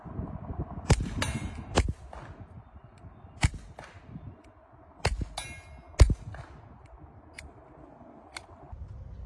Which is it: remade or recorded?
recorded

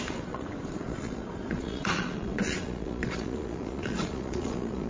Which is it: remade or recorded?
remade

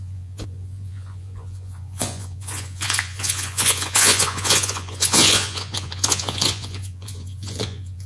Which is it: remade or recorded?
remade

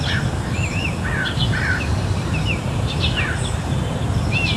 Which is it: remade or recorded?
recorded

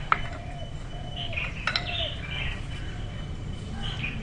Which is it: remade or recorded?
recorded